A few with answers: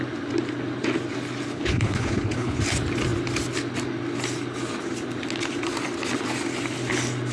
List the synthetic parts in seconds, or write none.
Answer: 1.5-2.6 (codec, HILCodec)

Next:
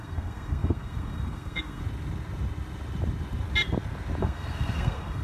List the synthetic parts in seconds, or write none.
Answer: 0.0-1.8 (codec, SNAC); 4.2-5.2

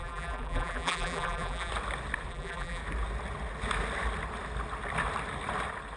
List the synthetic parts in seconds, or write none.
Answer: 0.0-1.7 (vocoder, BigVGAN v2); 2.3-2.8

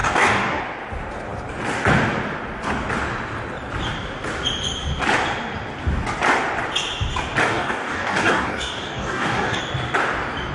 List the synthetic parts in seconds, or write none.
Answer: 0.0-0.6 (codec, DAC); 7.4-9.6